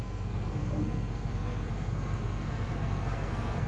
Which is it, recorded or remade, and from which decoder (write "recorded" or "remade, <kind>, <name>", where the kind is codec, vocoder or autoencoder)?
remade, codec, SNAC